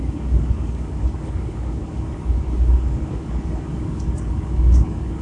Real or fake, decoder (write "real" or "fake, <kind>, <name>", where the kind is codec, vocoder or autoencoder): fake, codec, DAC